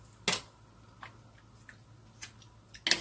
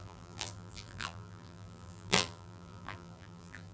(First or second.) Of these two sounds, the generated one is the second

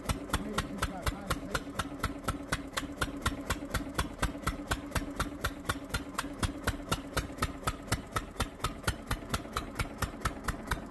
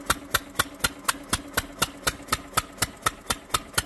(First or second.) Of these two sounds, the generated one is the first